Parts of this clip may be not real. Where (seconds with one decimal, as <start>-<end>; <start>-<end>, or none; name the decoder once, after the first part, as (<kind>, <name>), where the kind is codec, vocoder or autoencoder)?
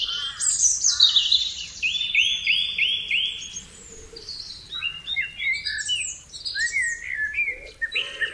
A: none